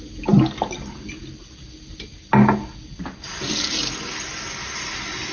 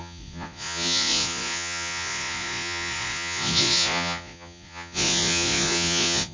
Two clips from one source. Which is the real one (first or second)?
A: first